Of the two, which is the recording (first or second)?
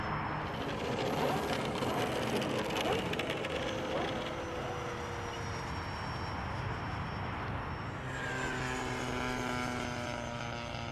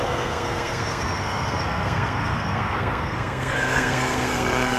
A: first